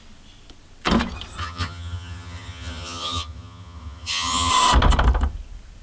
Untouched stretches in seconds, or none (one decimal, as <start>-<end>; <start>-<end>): 0.0-1.4; 4.5-5.8